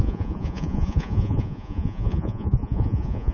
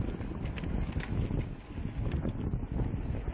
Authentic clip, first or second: second